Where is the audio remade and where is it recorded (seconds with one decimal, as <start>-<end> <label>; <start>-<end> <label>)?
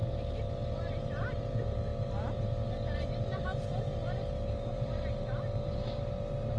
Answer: 0.0-6.6 remade